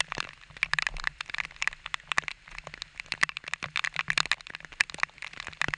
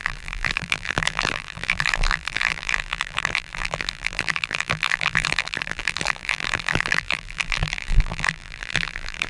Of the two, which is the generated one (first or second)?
second